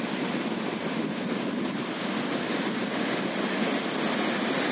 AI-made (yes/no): no